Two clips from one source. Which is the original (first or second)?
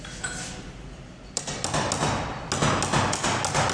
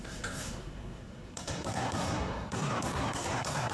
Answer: first